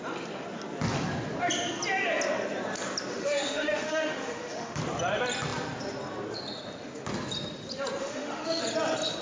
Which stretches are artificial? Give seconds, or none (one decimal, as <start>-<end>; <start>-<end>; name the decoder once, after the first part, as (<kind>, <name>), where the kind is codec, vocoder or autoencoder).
3.1-4.8 (autoencoder, DAC-VAE); 8.0-8.6